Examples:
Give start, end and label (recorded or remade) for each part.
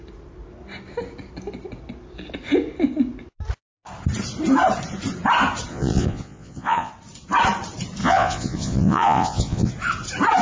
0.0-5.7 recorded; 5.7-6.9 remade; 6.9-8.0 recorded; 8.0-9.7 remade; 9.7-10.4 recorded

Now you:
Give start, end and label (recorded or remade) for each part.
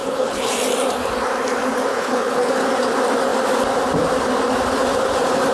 0.0-0.5 remade; 0.5-1.9 recorded; 1.9-2.5 remade; 2.5-5.5 recorded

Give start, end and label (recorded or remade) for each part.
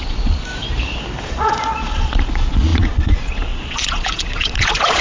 0.0-0.5 remade; 0.5-1.2 recorded; 1.2-5.0 remade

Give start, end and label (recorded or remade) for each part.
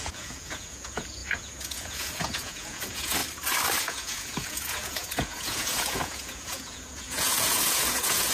0.0-3.2 remade; 3.2-3.8 recorded; 3.8-8.3 remade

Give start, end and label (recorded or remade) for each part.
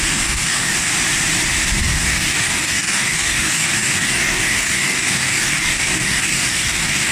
0.0-0.9 remade; 0.9-1.8 recorded; 1.8-7.1 remade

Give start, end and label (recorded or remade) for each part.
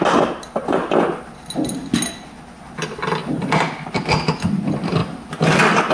0.0-5.9 recorded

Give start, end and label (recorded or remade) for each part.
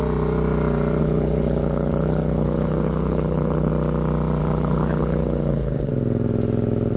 0.0-1.0 recorded; 1.0-3.7 remade; 3.7-4.4 recorded; 4.4-5.9 remade; 5.9-7.0 recorded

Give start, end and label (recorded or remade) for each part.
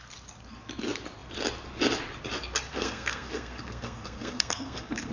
0.0-2.7 recorded; 2.7-5.1 remade